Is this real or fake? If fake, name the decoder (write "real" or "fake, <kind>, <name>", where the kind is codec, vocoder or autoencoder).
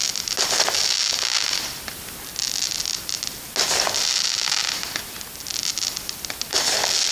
real